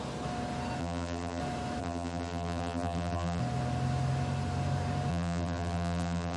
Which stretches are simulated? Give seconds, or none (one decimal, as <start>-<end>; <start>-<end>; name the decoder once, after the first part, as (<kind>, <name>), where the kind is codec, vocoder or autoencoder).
0.8-1.4 (vocoder, BigVGAN v2); 1.8-3.4; 5.1-6.4